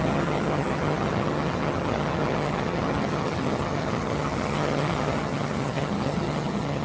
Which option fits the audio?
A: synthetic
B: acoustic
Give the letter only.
A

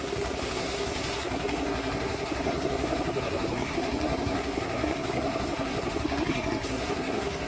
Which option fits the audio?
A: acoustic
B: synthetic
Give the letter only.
B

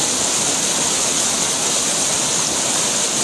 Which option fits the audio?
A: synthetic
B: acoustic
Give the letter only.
B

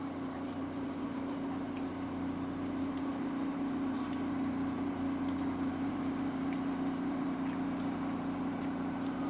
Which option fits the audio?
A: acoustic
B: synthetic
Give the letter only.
B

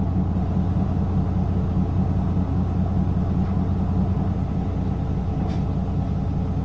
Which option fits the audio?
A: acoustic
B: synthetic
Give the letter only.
A